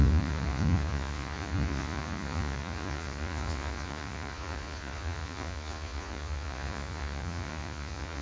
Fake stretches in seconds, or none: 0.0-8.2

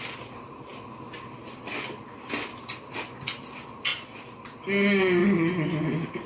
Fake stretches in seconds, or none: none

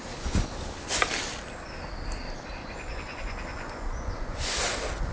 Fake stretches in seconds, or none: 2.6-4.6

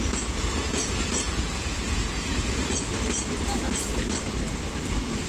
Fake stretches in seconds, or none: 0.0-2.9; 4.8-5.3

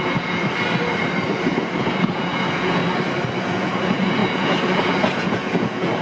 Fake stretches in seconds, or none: 0.0-0.4; 1.4-2.8; 3.4-6.0

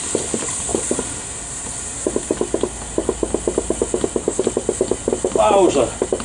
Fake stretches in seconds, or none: none